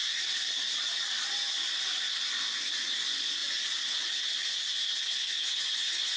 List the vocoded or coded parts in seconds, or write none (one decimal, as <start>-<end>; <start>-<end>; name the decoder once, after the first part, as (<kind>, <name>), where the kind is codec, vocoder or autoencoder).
3.4-5.6 (vocoder, Vocos)